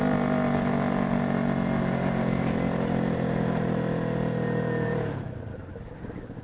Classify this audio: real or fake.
real